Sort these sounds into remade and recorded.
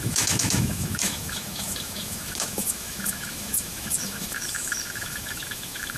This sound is remade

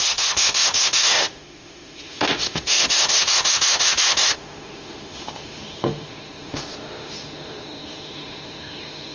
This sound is remade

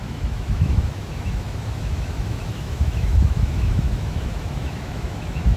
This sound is remade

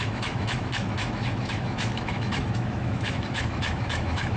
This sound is remade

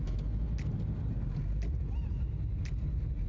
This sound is recorded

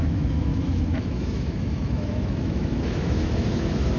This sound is remade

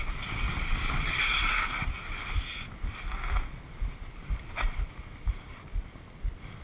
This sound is recorded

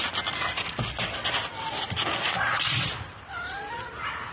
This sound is recorded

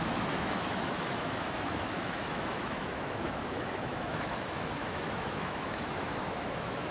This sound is remade